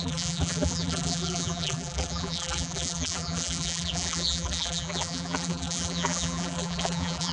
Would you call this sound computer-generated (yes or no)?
yes